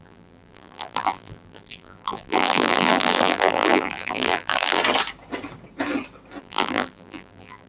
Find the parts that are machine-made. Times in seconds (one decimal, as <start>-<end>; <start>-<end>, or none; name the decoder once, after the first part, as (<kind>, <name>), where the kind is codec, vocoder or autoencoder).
0.0-4.8 (vocoder, BigVGAN v2); 6.4-7.7